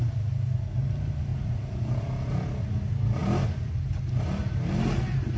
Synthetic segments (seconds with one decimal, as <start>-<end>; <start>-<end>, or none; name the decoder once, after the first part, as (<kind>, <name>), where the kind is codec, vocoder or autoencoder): 1.3-2.3 (vocoder, BigVGAN v2)